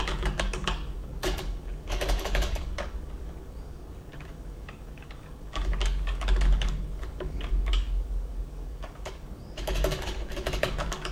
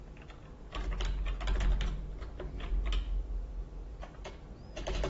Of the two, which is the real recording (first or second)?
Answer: second